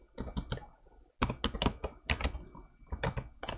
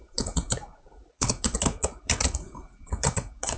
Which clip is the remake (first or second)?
second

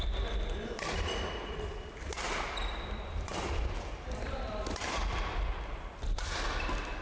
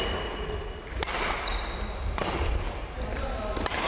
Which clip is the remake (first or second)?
first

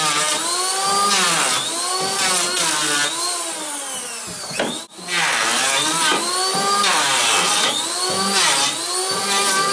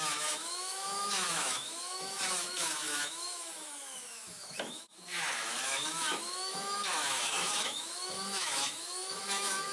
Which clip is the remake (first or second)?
second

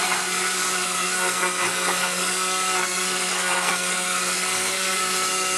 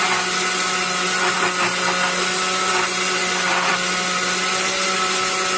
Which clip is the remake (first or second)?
first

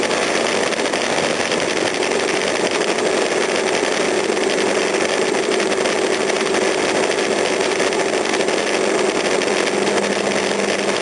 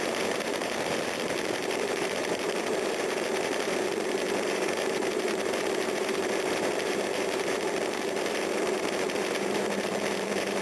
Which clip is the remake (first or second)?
second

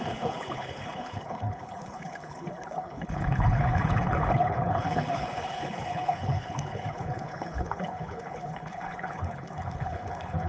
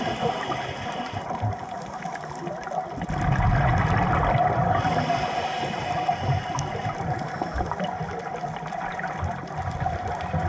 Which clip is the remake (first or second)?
first